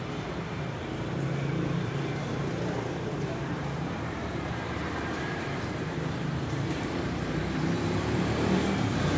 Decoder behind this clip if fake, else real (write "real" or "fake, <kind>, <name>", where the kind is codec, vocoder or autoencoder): fake, vocoder, BigVGAN v2